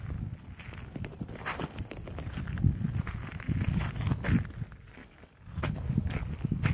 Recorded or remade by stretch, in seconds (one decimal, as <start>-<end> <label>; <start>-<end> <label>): 0.0-5.0 recorded; 5.0-6.1 remade; 6.1-6.7 recorded